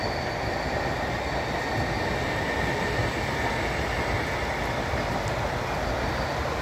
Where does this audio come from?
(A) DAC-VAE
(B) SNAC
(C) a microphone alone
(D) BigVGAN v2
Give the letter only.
C